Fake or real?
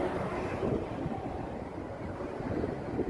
fake